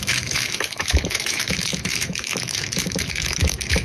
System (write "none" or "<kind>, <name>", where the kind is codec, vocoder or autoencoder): autoencoder, DAC-VAE